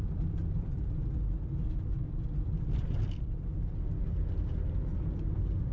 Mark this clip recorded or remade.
recorded